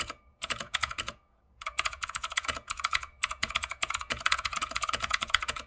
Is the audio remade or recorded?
remade